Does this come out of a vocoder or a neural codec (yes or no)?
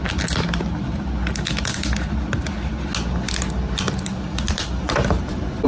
no